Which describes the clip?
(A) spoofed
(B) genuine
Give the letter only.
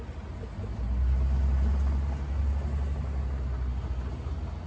B